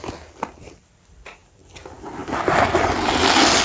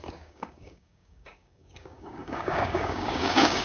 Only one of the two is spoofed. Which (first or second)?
second